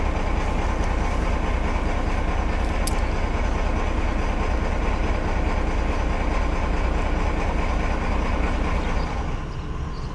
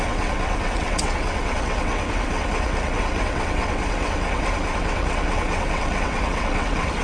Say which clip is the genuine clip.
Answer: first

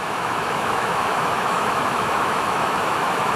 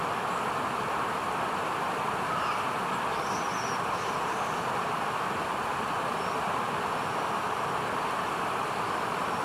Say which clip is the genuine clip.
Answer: second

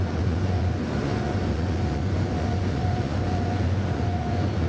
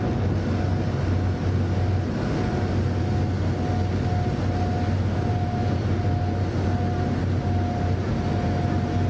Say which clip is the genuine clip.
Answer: second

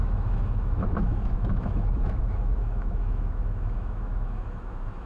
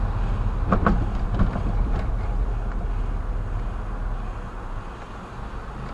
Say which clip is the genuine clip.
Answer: second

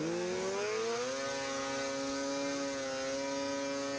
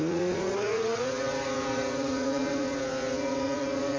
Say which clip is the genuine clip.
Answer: first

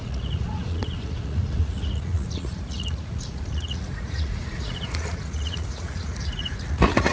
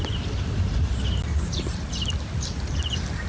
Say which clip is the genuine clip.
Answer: second